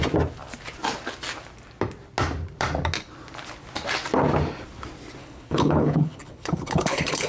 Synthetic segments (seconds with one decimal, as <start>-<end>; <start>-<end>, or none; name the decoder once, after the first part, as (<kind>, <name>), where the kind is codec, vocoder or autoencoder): 5.2-7.3 (codec, HILCodec)

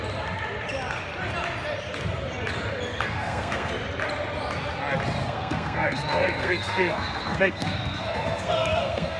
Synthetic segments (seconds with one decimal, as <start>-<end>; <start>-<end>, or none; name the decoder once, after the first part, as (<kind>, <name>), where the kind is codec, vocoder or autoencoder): 2.9-3.7 (codec, SNAC); 5.2-9.2

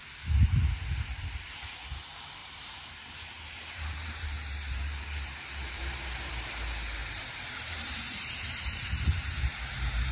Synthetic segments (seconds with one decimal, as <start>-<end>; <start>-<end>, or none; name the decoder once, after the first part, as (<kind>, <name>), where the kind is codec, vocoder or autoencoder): 2.4-6.3 (vocoder, BigVGAN v2); 7.0-9.6

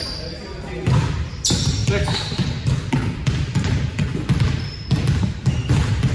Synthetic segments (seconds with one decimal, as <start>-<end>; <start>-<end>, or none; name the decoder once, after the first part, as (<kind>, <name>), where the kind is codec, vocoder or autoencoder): 0.0-1.8 (vocoder, BigVGAN v2); 5.5-6.1

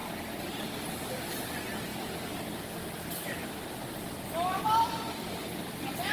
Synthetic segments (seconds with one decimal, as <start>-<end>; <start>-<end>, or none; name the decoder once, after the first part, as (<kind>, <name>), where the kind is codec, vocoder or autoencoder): none

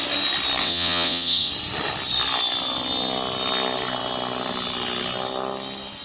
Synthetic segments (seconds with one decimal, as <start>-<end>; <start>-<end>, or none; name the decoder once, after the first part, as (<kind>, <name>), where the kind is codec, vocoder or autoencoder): 0.6-1.5 (vocoder, WaveNeXt)

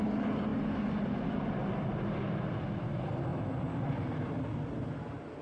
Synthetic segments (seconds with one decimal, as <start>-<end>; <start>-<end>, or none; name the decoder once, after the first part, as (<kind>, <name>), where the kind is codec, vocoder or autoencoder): none